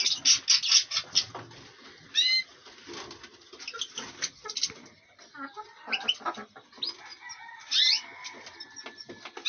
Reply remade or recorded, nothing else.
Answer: recorded